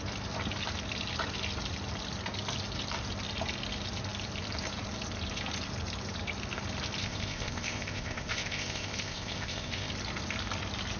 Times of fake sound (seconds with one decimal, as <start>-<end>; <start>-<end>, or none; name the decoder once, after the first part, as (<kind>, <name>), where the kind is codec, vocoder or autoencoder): 7.0-9.9 (codec, ZipCodec)